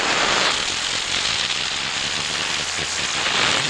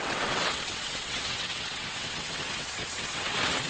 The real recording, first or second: first